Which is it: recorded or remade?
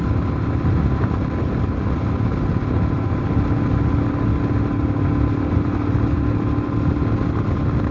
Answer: recorded